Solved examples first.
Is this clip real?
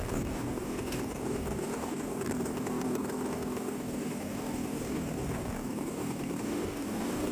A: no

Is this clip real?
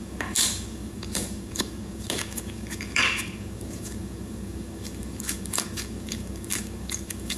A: no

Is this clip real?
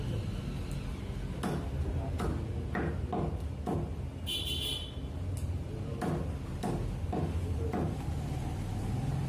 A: yes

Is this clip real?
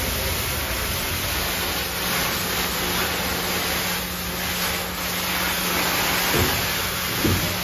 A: yes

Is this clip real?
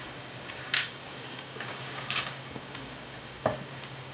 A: no